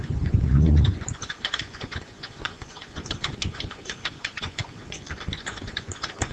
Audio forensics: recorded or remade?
remade